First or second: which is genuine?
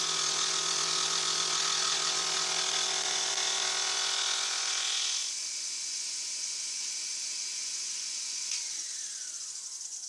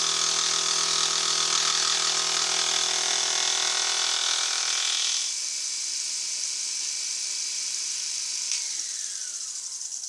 second